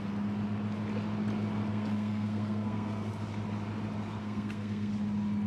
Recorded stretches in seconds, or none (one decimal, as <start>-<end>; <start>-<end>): 0.0-1.7; 3.1-4.2; 4.9-5.5